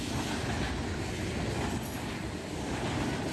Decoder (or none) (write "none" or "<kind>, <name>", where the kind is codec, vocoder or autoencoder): none